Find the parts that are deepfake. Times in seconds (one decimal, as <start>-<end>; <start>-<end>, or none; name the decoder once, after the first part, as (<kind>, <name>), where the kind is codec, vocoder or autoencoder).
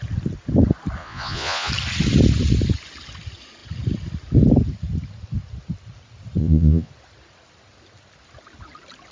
1.0-1.7 (vocoder, Vocos); 6.4-6.9